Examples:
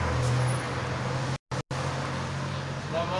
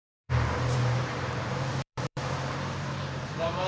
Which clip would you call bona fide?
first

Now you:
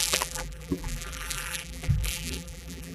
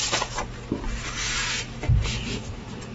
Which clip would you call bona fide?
second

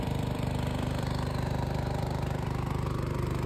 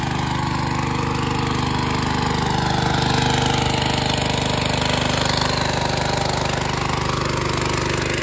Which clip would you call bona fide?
second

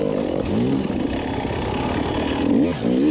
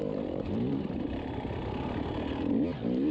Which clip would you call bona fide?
first